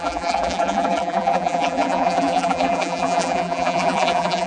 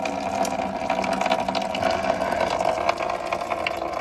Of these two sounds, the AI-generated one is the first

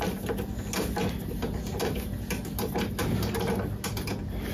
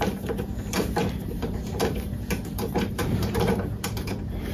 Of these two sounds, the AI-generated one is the second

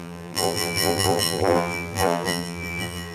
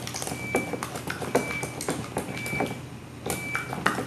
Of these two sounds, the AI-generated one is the first